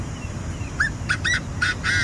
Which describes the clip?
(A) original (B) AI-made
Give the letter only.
A